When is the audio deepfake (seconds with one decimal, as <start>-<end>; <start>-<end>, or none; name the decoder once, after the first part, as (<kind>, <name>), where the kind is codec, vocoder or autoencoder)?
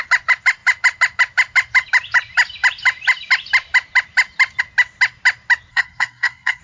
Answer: 5.7-6.6 (codec, SNAC)